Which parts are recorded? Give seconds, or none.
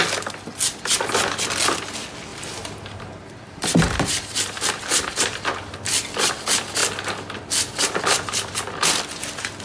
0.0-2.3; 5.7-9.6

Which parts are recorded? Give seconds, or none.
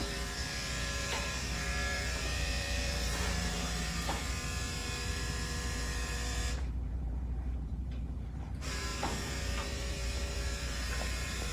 none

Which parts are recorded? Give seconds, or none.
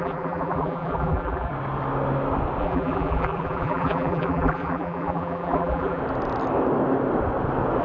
1.5-2.6; 6.0-7.8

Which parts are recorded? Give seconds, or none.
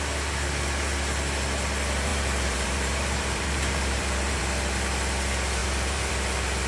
0.0-2.1; 4.4-5.6; 6.1-6.7